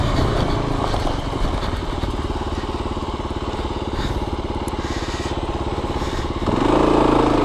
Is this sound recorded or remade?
recorded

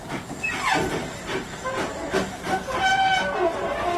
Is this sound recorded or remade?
recorded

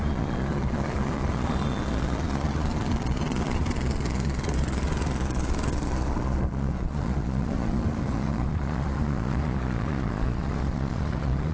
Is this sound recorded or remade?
remade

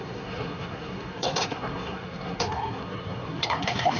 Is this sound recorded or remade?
remade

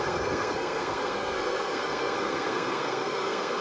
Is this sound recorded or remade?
remade